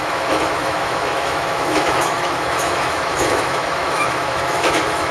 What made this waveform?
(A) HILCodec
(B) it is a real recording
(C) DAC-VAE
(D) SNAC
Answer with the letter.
C